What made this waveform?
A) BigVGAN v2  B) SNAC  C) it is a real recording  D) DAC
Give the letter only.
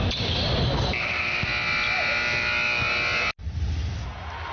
C